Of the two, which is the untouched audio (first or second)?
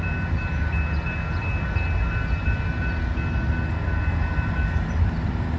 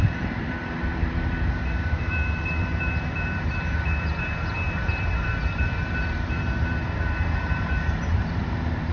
first